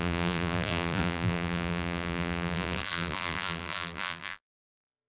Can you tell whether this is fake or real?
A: fake